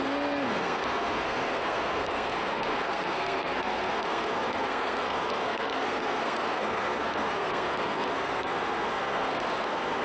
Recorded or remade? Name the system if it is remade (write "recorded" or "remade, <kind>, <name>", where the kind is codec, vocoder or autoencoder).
remade, codec, SNAC